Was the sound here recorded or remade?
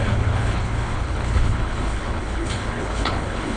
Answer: remade